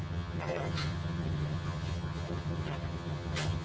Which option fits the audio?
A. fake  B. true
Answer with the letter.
A